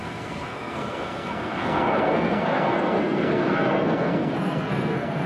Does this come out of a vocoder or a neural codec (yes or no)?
yes